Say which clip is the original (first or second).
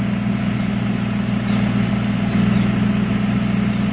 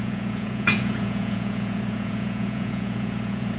first